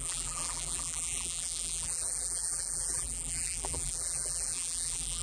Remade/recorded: remade